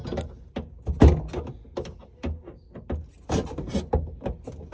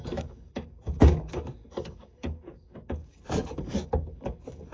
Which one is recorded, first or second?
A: first